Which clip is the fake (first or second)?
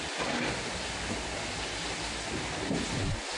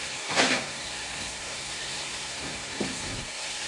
second